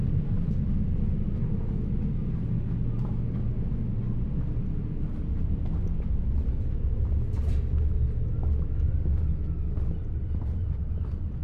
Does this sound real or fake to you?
real